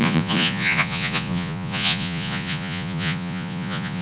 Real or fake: fake